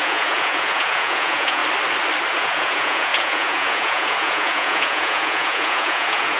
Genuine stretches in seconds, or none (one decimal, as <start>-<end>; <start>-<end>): 1.6-2.3